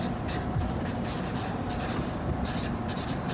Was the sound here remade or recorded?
recorded